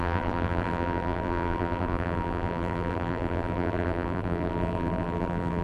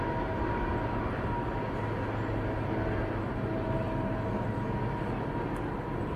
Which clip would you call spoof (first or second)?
first